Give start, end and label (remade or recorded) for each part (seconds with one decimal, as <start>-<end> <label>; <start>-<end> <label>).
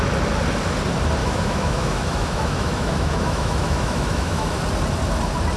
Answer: 0.0-1.2 recorded; 1.2-4.6 remade; 4.6-5.6 recorded